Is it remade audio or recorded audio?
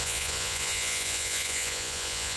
remade